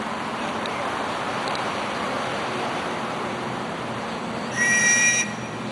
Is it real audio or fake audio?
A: fake